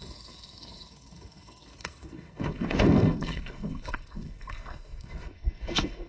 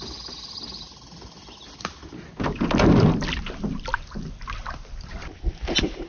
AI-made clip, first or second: first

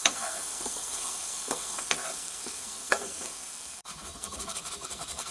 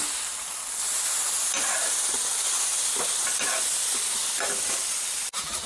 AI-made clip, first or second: first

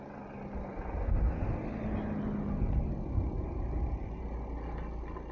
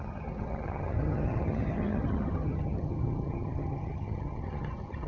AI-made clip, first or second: second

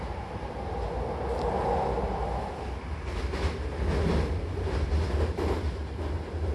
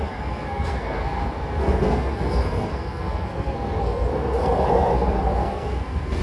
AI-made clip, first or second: second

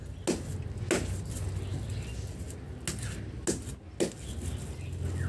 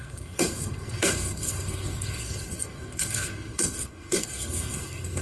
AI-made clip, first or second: second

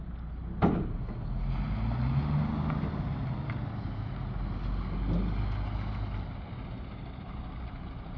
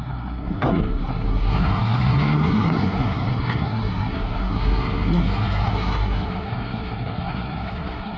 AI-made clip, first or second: second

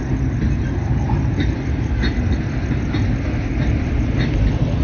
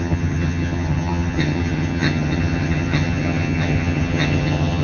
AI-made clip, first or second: second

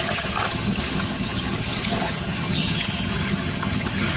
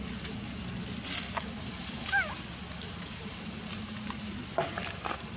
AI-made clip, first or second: first